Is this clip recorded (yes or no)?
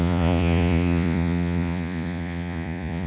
no